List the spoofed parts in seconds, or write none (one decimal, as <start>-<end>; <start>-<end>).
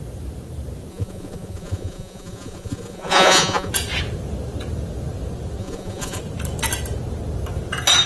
0.9-3.7; 5.6-6.2